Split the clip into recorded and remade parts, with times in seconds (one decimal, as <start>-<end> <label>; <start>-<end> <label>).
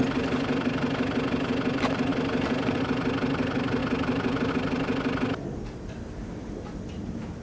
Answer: 0.0-3.8 recorded; 3.8-4.5 remade; 4.5-7.4 recorded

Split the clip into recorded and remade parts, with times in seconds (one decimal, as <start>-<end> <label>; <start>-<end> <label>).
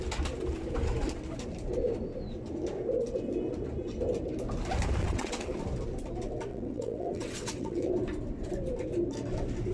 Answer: 0.0-5.0 recorded; 5.0-5.6 remade; 5.6-6.5 recorded; 6.5-7.9 remade; 7.9-9.7 recorded